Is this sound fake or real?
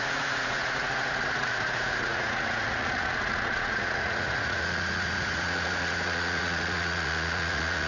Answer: fake